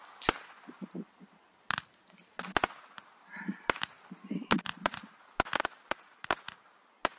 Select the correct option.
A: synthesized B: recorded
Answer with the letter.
B